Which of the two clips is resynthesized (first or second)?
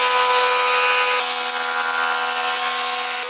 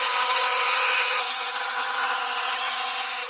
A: second